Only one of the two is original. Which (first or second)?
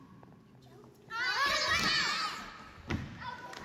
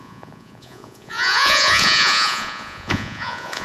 first